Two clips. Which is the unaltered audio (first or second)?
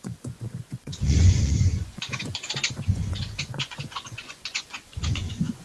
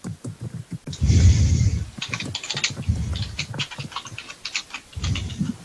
second